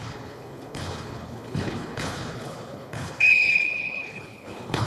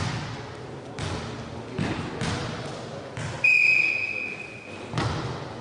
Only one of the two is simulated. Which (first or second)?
first